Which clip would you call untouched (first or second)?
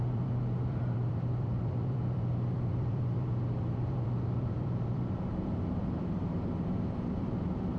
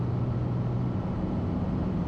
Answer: second